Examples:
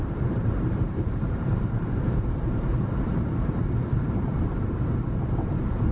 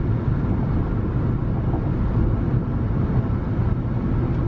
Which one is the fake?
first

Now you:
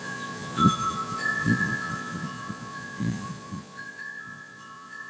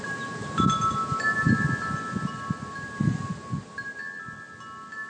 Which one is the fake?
first